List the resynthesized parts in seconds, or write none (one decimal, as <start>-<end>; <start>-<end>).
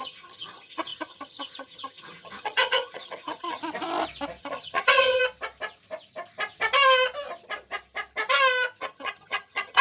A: 0.0-3.6; 4.4-5.2; 8.8-9.8